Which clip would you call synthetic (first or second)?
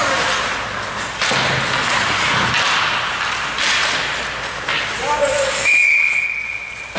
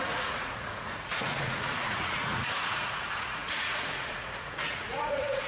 second